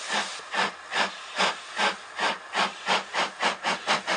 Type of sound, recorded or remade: recorded